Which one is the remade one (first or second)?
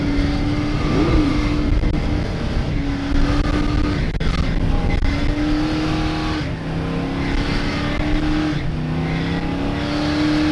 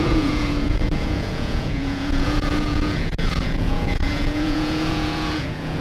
second